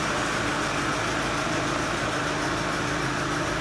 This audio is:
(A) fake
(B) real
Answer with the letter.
B